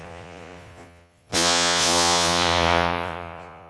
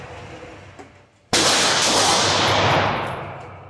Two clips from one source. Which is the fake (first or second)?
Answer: first